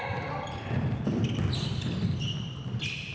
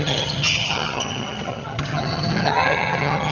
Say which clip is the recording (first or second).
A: first